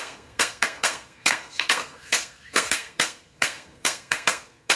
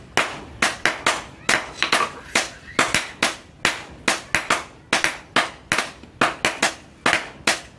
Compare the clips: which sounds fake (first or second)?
first